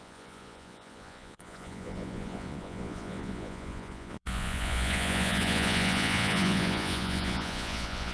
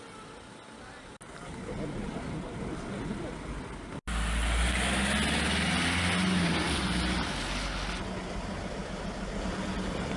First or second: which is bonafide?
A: second